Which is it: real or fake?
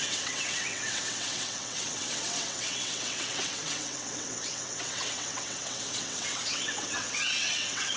fake